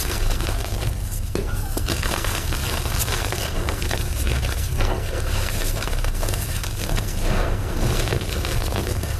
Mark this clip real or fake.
fake